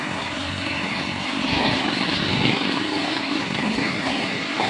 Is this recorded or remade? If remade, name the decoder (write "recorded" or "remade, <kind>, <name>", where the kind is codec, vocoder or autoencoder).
remade, codec, SNAC